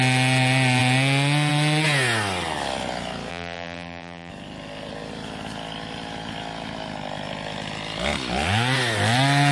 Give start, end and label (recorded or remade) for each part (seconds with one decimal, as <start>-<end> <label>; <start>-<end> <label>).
0.0-3.3 recorded; 3.3-4.3 remade; 4.3-9.5 recorded